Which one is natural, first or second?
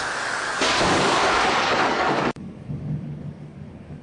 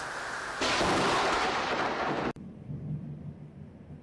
second